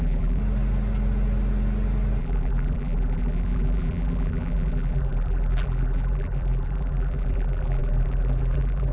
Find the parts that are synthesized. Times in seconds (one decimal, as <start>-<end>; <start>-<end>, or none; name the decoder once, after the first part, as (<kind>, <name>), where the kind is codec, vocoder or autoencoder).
0.0-0.4 (vocoder, BigVGAN v2); 2.2-8.9